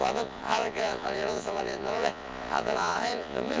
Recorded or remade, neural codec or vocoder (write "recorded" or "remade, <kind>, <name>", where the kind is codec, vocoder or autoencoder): remade, vocoder, Vocos